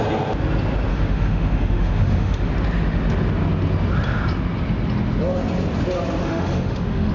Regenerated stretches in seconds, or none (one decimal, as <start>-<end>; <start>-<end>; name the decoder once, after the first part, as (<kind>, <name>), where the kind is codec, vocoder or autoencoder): 0.9-2.5 (autoencoder, DAC-VAE); 6.2-7.1